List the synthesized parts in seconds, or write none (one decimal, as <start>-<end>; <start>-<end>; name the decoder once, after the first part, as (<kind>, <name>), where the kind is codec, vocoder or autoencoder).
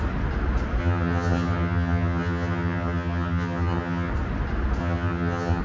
0.8-4.1 (vocoder, HiFi-GAN); 4.8-5.6